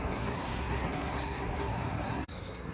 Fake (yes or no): yes